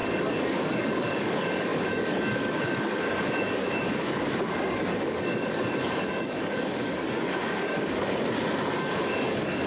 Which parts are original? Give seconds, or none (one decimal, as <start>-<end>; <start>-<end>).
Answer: none